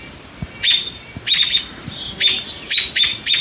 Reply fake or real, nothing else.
real